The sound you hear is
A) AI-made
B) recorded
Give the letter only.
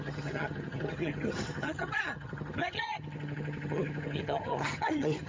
A